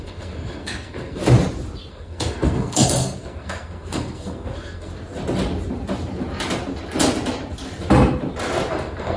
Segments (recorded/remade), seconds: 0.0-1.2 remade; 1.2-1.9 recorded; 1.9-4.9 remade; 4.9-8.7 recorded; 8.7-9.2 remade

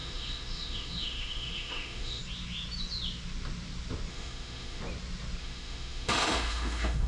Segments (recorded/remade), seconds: 0.0-2.2 remade; 2.2-4.1 recorded; 4.1-4.8 remade; 4.8-5.4 recorded; 5.4-7.1 remade

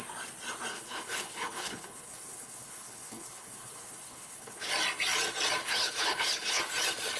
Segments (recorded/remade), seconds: 0.0-0.7 recorded; 0.7-4.7 remade; 4.7-5.6 recorded; 5.6-6.6 remade; 6.6-7.2 recorded

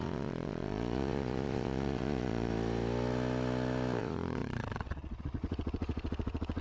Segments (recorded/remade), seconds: 0.0-2.5 remade; 2.5-4.0 recorded; 4.0-6.6 remade

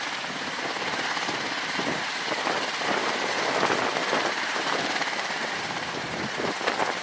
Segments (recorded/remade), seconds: 0.0-4.0 recorded; 4.0-6.4 remade; 6.4-7.0 recorded

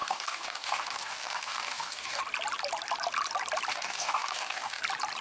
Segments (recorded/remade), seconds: 0.0-2.2 remade; 2.2-3.7 recorded; 3.7-4.8 remade; 4.8-5.2 recorded